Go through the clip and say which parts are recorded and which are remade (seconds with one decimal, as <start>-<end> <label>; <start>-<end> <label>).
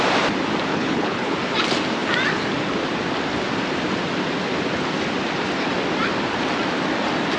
0.0-0.7 recorded; 0.7-1.3 remade; 1.3-7.4 recorded